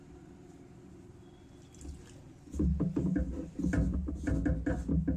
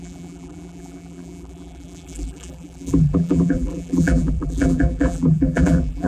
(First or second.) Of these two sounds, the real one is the first